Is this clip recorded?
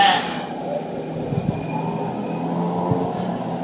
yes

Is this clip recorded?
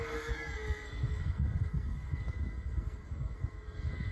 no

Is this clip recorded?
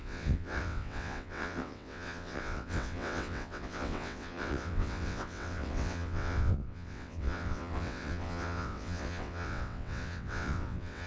no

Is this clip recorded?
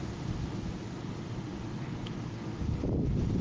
yes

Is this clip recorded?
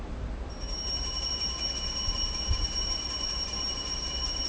no